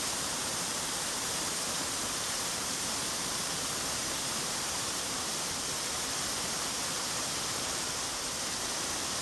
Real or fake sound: fake